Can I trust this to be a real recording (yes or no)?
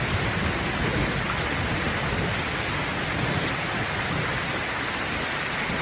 yes